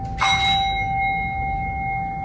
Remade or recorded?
recorded